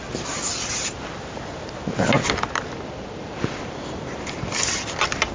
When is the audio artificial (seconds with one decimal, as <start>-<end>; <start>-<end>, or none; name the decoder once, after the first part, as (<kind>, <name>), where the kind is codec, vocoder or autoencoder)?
none